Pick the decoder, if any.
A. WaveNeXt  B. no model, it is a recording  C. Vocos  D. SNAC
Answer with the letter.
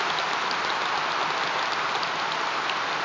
B